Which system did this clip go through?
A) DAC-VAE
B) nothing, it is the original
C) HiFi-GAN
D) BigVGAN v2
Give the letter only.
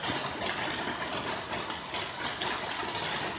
B